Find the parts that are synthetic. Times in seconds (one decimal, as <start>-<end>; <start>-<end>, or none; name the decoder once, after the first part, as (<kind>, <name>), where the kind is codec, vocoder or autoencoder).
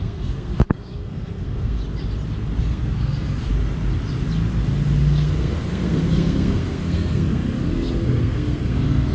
0.0-1.8 (codec, SNAC); 2.6-3.5; 5.0-9.1